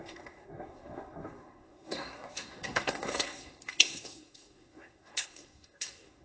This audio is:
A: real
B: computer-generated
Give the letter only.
B